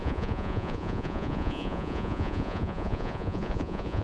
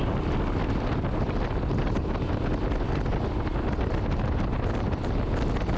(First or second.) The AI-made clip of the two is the first